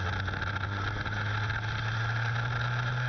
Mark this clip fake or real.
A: real